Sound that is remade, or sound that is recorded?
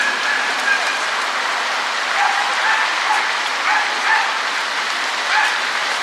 recorded